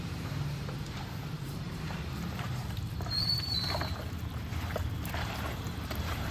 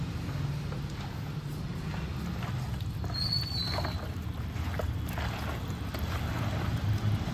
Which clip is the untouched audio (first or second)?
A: second